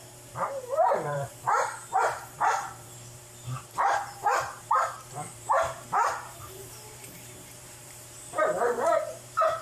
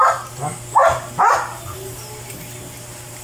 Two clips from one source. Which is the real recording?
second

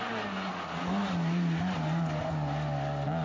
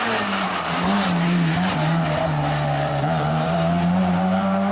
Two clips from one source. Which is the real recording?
first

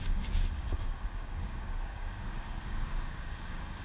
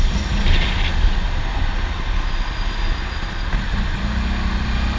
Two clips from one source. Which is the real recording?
second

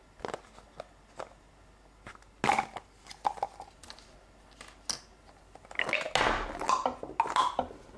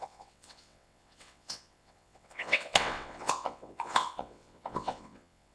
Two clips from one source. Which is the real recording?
first